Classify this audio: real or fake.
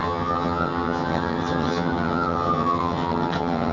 fake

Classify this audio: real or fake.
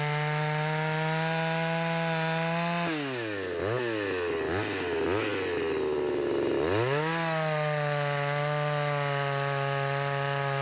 real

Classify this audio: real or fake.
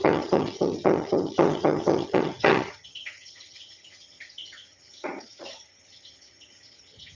fake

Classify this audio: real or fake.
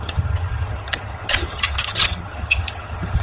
fake